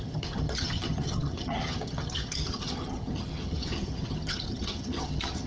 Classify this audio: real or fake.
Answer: fake